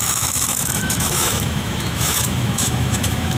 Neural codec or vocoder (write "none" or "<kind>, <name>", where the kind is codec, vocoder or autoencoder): autoencoder, DAC-VAE